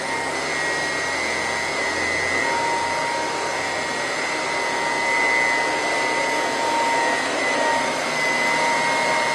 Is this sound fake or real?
real